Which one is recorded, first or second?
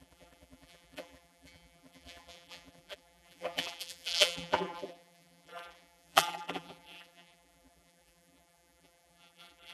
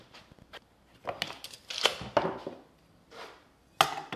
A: second